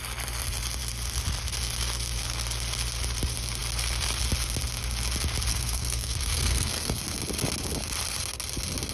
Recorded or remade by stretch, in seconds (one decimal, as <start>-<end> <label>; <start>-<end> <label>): 0.0-5.5 recorded; 5.5-7.0 remade; 7.0-8.9 recorded